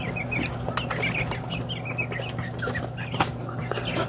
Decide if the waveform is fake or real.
real